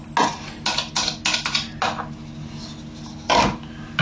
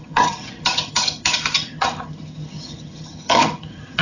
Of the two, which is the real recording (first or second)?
first